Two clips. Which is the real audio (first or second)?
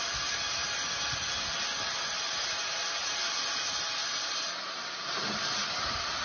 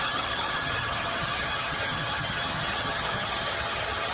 first